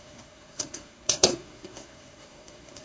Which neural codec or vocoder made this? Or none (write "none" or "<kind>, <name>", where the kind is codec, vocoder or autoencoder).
codec, SNAC